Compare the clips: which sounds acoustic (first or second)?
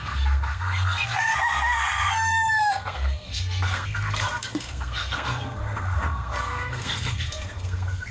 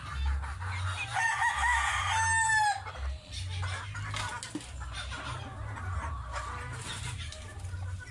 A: second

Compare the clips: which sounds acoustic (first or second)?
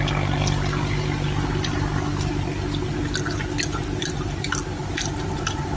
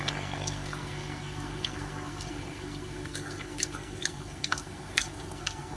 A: first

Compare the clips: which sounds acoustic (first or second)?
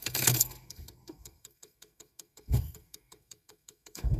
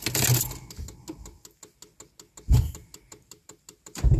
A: second